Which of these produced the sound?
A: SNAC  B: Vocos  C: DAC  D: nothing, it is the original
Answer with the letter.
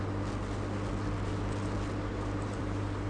D